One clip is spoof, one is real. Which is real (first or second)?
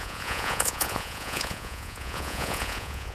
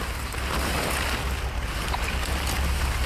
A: second